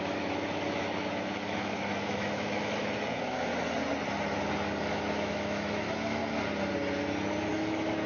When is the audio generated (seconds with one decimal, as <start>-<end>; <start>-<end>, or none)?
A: 0.0-3.5; 4.8-6.2; 7.5-8.1